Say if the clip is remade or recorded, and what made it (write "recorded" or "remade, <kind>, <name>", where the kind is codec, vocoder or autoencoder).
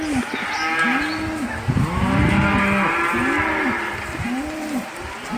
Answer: recorded